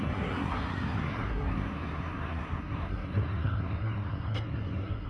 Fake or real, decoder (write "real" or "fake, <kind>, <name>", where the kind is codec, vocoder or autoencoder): fake, codec, SNAC